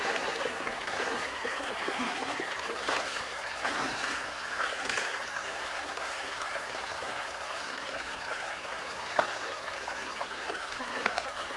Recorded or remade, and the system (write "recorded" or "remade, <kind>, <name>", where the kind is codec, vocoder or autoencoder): remade, codec, SNAC